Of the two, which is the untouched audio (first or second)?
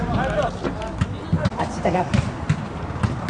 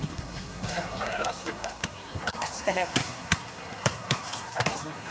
first